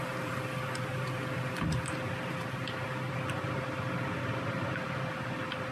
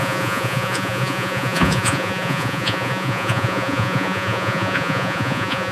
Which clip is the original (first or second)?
first